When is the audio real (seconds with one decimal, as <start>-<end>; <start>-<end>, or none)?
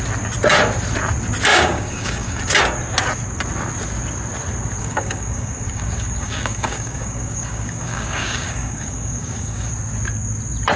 0.0-1.5; 2.4-4.8; 9.7-10.8